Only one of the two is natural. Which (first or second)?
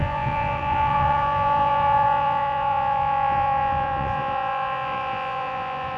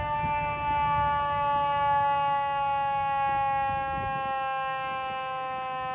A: second